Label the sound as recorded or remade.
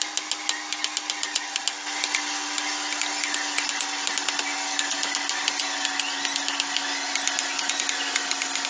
recorded